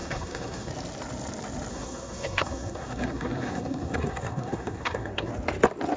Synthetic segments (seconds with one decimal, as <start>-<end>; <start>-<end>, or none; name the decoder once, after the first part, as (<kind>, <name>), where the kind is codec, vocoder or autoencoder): 0.0-0.7 (codec, SNAC); 1.7-5.3